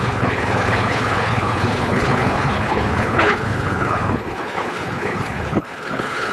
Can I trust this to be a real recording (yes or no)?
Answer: no